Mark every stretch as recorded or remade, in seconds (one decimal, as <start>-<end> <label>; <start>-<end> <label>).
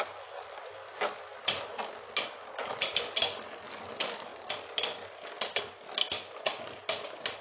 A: 0.0-7.4 recorded